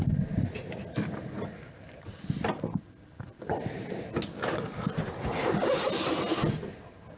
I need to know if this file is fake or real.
real